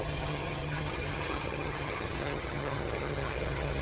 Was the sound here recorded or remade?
remade